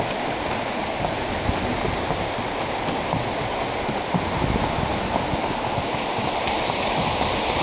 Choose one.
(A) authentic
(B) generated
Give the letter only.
A